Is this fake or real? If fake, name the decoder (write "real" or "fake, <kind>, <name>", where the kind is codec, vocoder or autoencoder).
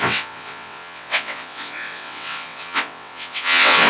fake, vocoder, WaveNeXt